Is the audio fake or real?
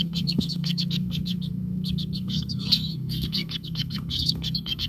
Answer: fake